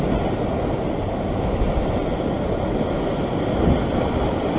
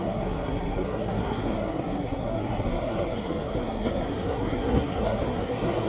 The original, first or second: first